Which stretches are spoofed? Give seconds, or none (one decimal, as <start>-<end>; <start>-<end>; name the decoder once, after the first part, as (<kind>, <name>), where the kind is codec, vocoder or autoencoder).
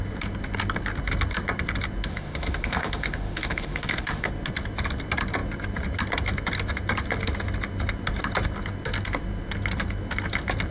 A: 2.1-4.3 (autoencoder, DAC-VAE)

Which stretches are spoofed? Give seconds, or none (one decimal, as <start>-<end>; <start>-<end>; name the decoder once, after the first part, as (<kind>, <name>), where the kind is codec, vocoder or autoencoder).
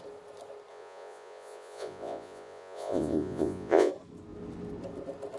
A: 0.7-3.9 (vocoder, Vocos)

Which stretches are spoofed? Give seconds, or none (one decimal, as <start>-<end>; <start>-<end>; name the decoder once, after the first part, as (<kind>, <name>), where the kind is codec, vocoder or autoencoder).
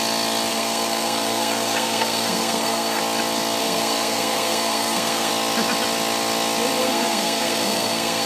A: 0.5-3.0 (codec, SNAC); 3.6-5.3; 6.8-8.3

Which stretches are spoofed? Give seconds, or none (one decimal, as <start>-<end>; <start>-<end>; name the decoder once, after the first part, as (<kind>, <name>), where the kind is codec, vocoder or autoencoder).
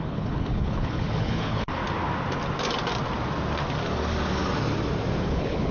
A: 0.0-1.8 (codec, HILCodec); 5.2-5.7